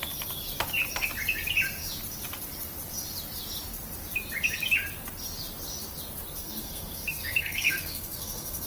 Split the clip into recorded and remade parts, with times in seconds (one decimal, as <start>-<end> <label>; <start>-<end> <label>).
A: 0.0-6.4 recorded; 6.4-8.7 remade